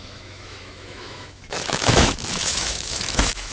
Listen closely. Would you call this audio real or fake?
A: fake